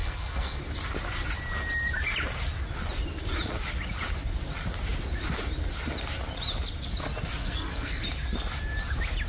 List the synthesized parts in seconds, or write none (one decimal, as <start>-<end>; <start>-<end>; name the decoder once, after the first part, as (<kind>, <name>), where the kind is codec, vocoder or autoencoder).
0.0-0.6 (codec, SNAC); 7.4-8.0